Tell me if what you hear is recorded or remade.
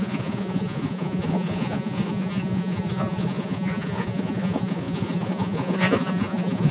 remade